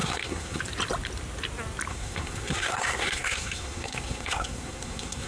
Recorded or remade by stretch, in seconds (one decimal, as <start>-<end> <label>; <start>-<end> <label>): 0.0-0.6 remade; 0.6-1.9 recorded; 1.9-5.3 remade